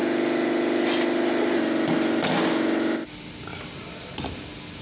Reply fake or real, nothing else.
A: real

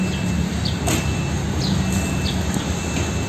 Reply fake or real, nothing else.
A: real